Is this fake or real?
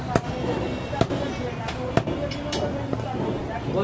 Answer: real